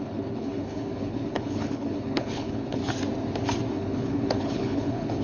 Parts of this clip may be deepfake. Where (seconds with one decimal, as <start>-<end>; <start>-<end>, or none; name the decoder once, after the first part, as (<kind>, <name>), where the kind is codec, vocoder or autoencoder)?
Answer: 0.0-2.8 (codec, HILCodec); 3.7-5.2